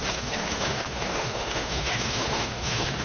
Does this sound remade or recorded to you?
remade